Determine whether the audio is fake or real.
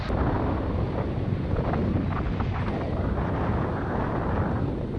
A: real